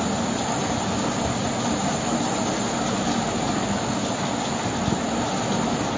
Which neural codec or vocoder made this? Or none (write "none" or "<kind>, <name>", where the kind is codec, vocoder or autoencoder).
none